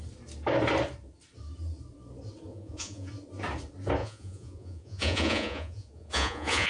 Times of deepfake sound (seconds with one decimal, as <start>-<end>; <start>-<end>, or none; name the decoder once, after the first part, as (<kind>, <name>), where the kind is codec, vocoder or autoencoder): 2.5-3.1 (vocoder, Vocos); 4.0-6.7